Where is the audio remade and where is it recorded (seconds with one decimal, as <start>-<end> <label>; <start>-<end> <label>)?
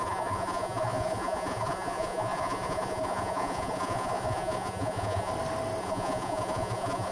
0.0-5.3 remade; 5.3-5.8 recorded; 5.8-7.1 remade